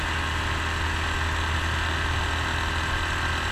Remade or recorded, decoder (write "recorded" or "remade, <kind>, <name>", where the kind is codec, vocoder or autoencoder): recorded